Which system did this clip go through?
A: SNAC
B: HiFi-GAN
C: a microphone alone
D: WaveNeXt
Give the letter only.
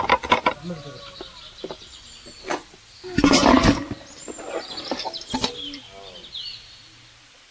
C